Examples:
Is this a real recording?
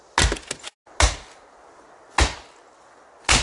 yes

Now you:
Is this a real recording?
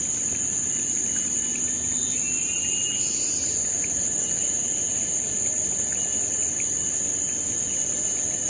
yes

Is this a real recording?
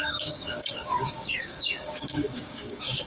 no